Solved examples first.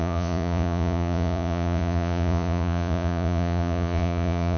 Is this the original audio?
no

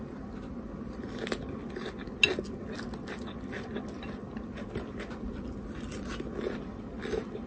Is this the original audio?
yes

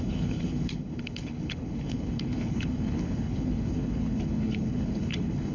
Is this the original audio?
no